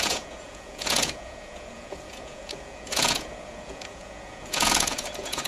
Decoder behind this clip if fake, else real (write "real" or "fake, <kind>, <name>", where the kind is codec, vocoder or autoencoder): fake, vocoder, Vocos